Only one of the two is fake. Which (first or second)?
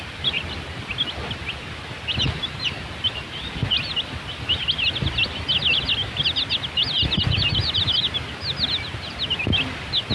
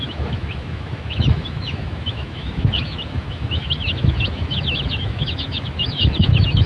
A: second